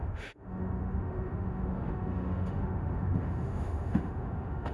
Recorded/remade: remade